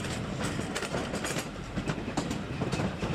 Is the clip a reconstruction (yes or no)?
no